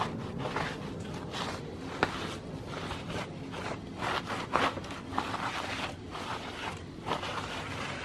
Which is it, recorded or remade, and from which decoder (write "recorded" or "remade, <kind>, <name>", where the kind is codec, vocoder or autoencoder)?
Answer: recorded